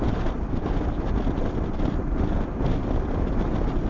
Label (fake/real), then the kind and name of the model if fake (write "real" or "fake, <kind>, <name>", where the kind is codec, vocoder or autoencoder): real